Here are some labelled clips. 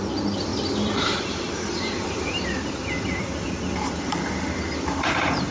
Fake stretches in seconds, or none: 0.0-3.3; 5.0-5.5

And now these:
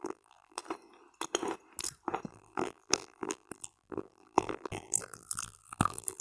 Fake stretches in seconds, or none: 0.0-0.6; 2.3-6.2

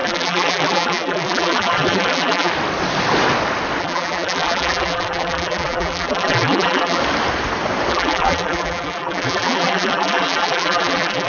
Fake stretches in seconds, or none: 0.0-2.5; 3.8-7.0; 7.9-11.3

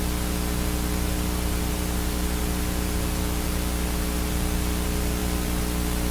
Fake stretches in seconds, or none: none

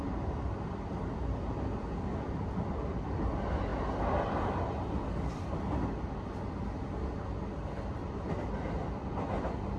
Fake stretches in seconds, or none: none

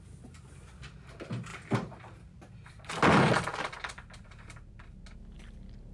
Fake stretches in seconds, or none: 1.5-2.9; 3.5-5.0

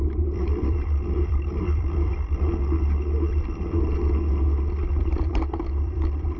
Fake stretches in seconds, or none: 0.0-2.1; 5.1-6.4